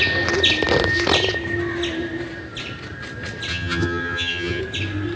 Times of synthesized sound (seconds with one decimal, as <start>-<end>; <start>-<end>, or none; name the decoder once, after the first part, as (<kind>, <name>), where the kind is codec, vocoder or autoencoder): 3.5-4.6 (vocoder, HiFi-GAN)